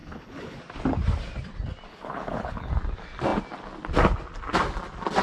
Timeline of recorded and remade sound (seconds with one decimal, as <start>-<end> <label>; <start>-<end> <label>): 0.0-0.6 remade; 0.6-1.9 recorded; 1.9-2.7 remade; 2.7-5.2 recorded